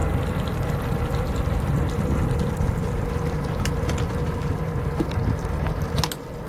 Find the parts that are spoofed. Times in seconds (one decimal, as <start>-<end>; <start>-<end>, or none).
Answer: 0.0-2.9